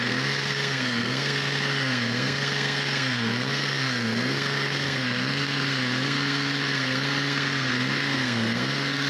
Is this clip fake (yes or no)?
yes